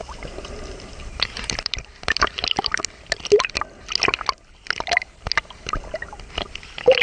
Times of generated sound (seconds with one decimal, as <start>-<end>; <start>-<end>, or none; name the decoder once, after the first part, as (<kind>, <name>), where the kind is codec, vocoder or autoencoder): 0.0-2.8 (vocoder, BigVGAN v2)